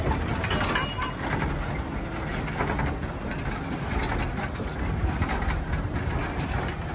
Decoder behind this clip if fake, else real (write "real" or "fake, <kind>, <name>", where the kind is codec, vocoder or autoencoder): real